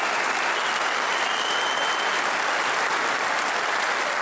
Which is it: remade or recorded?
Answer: recorded